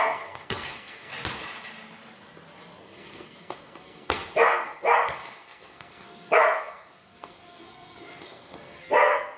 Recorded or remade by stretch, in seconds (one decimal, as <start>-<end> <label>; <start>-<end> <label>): 0.0-1.1 remade; 1.1-2.8 recorded; 2.8-9.4 remade